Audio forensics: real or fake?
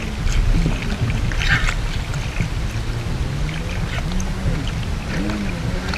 real